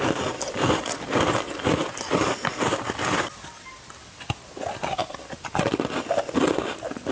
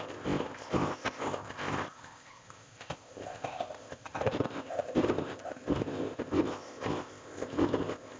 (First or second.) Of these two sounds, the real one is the first